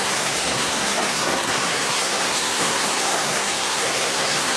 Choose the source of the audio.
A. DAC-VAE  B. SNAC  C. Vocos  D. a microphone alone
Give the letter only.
B